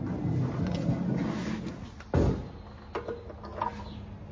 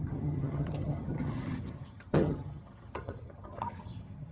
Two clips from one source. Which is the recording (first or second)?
first